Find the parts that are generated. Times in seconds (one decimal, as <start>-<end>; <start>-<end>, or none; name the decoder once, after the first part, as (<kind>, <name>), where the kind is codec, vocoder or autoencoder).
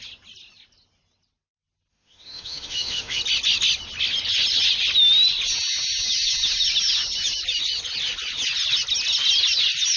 1.9-3.2 (autoencoder, DAC-VAE)